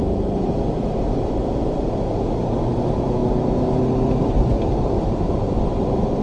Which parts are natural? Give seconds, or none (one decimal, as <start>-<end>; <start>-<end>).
3.2-4.2